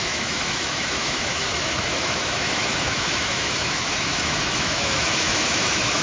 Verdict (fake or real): fake